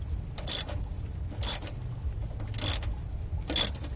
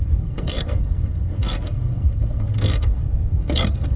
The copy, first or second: second